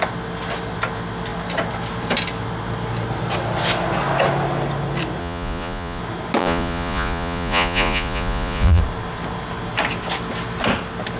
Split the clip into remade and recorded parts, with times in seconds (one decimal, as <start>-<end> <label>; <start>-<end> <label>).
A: 0.0-5.2 recorded; 5.2-6.0 remade; 6.0-6.4 recorded; 6.4-8.8 remade; 8.8-11.2 recorded